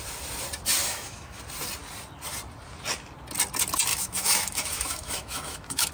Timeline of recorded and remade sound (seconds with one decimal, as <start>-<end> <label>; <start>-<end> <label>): 0.0-0.8 recorded; 0.8-1.4 remade; 1.4-3.9 recorded; 3.9-5.9 remade